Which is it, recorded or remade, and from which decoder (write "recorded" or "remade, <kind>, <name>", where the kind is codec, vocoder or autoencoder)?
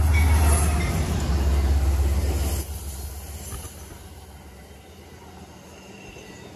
recorded